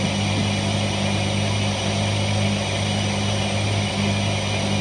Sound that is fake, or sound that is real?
real